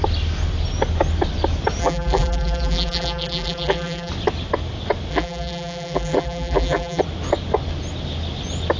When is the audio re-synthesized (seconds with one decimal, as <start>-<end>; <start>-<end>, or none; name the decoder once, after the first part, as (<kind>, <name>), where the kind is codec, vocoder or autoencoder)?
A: 1.8-4.1 (vocoder, BigVGAN v2); 5.1-7.0